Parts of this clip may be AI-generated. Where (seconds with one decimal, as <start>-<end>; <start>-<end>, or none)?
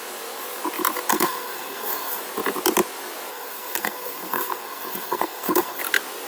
1.1-2.2; 3.3-5.8